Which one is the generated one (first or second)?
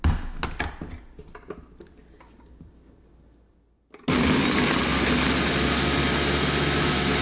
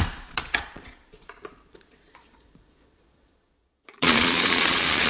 second